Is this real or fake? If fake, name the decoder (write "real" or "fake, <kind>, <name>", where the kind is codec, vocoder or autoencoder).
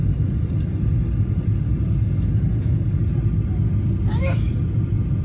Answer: real